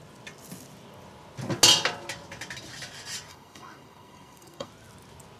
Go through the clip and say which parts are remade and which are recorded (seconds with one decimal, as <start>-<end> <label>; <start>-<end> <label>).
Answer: 0.0-3.3 recorded; 3.3-4.7 remade; 4.7-5.4 recorded